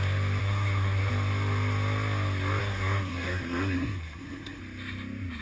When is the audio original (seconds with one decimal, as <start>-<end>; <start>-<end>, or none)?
0.0-0.4; 1.1-2.6; 4.6-5.4

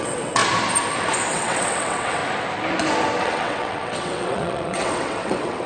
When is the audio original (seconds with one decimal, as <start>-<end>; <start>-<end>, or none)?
0.4-1.3; 2.2-3.2

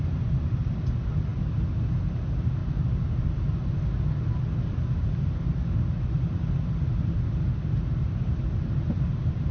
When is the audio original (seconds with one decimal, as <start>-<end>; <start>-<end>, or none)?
0.0-2.6; 3.3-9.5

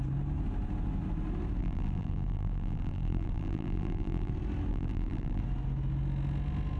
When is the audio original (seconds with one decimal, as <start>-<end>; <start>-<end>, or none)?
0.0-1.6; 4.3-4.7; 5.4-6.8

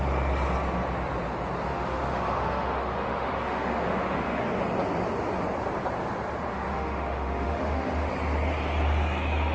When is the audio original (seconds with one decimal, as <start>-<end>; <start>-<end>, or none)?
0.0-1.7; 4.4-6.5; 8.1-9.5

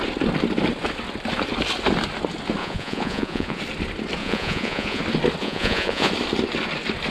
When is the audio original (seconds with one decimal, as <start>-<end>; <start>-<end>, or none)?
0.0-2.6; 3.6-4.2; 5.0-5.4; 6.1-7.1

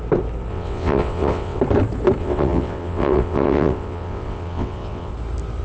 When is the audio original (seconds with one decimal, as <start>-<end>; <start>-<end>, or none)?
0.0-0.5; 1.6-2.2; 5.1-5.6